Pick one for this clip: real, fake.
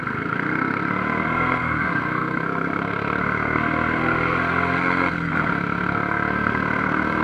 fake